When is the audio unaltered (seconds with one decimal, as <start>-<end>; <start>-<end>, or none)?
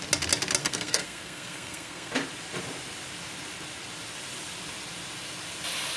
0.0-0.6; 2.1-6.0